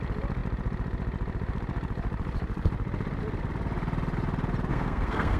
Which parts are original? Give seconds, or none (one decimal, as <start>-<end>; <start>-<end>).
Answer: 0.0-4.7